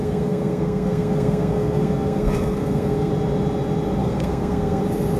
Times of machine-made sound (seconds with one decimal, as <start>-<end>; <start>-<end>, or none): 0.0-3.1; 4.0-4.8